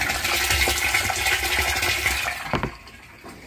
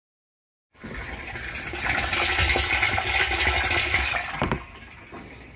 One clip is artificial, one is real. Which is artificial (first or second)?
second